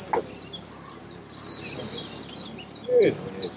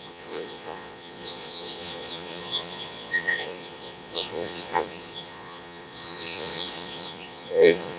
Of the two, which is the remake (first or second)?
second